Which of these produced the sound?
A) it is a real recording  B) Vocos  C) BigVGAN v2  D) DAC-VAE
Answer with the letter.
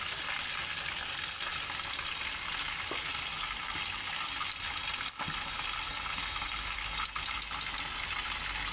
A